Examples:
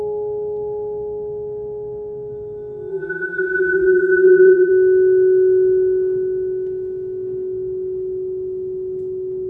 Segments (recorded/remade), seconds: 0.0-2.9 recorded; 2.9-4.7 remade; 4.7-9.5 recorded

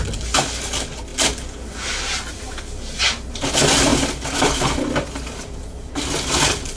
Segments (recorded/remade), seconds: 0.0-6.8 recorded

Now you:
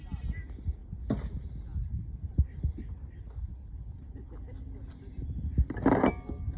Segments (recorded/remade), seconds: 0.0-0.8 recorded; 0.8-1.5 remade; 1.5-6.6 recorded